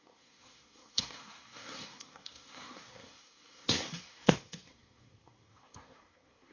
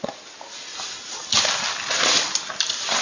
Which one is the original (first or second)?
second